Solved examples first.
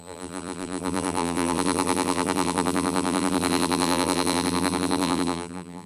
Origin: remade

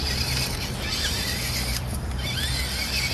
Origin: recorded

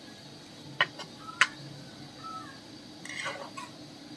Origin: recorded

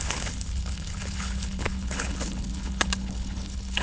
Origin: remade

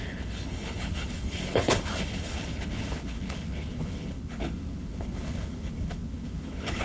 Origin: remade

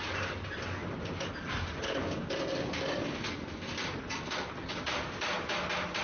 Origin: recorded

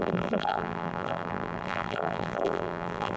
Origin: remade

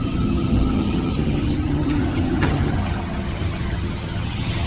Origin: remade